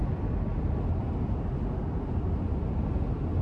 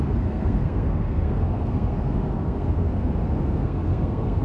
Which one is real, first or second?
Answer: first